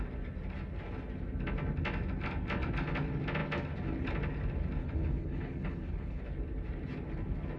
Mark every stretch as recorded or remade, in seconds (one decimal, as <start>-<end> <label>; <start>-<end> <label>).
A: 0.0-4.8 recorded; 4.8-6.2 remade; 6.2-7.6 recorded